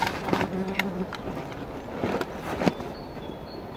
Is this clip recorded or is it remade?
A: recorded